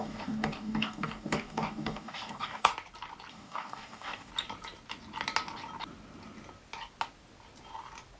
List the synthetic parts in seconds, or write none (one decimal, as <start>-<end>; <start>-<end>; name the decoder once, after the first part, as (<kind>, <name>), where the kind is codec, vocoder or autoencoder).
0.0-2.7 (codec, DAC); 3.3-4.3